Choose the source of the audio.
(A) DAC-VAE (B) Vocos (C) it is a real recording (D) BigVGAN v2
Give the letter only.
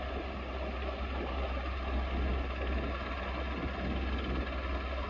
C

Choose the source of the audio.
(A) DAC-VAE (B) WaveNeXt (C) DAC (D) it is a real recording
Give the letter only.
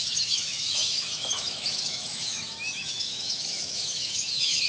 A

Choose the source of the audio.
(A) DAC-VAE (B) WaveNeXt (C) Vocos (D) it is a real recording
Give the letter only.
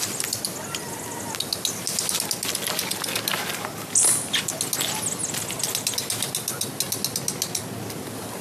D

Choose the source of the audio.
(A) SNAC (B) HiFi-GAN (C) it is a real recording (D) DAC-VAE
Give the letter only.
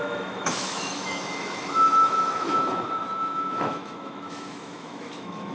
D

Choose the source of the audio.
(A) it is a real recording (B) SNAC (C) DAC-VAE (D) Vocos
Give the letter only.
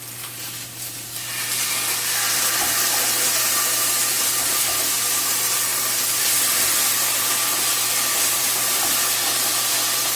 A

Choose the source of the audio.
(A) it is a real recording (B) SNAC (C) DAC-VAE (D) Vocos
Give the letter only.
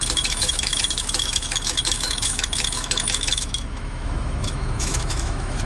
C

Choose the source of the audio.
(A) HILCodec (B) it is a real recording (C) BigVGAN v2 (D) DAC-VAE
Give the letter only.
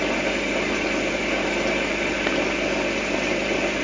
B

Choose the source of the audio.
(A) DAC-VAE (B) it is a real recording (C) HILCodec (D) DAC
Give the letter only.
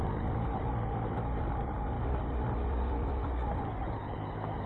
B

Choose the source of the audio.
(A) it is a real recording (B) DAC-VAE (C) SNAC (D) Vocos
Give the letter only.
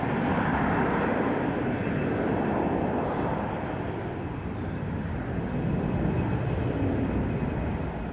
A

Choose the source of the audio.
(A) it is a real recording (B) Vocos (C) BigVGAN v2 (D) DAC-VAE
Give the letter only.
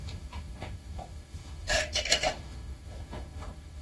D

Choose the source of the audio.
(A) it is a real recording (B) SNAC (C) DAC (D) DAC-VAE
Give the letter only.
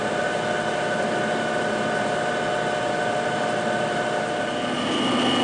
A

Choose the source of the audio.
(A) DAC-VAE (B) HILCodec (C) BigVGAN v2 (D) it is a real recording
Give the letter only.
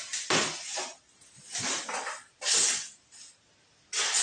D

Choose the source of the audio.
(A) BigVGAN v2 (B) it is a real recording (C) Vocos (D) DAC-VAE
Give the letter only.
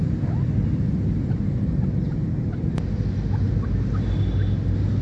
B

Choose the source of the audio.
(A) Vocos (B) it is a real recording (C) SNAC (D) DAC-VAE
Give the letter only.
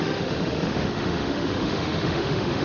D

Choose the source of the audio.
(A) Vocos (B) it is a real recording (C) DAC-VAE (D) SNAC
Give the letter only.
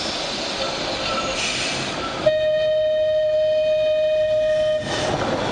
B